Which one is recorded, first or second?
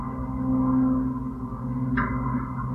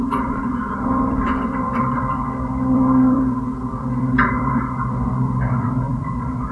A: first